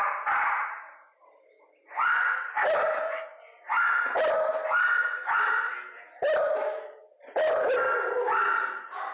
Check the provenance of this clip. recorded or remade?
recorded